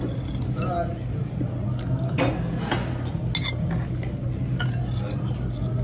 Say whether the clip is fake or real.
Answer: real